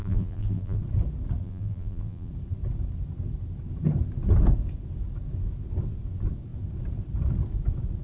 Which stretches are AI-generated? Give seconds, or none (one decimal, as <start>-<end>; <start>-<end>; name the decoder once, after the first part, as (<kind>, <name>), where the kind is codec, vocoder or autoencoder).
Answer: 0.0-0.8 (vocoder, BigVGAN v2); 1.4-2.3